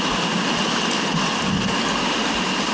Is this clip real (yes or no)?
yes